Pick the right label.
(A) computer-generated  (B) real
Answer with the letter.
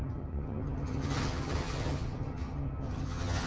A